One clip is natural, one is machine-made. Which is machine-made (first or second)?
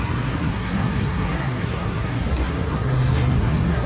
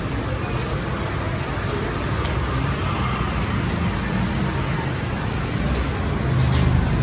first